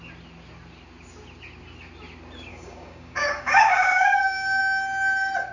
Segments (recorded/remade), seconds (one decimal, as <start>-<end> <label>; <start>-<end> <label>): 0.0-2.5 recorded; 2.5-4.6 remade; 4.6-5.5 recorded